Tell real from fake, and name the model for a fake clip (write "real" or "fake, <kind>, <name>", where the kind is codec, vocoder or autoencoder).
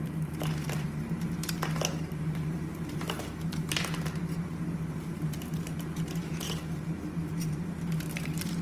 fake, vocoder, BigVGAN v2